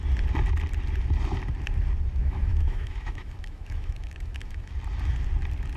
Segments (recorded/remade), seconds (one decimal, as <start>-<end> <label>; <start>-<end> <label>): 0.0-2.2 recorded; 2.2-4.7 remade; 4.7-5.8 recorded